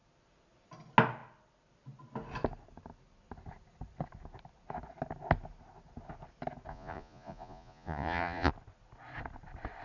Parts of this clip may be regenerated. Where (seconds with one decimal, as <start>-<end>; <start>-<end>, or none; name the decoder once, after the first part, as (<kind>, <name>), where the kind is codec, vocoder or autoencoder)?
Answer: 6.7-8.5 (vocoder, Vocos)